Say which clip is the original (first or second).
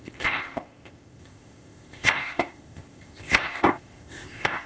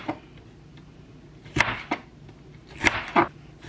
second